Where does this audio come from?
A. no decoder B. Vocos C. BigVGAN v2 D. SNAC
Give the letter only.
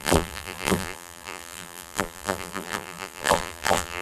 C